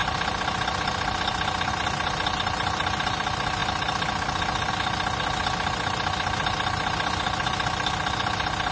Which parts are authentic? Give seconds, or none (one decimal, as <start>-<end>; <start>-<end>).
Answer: 0.0-8.7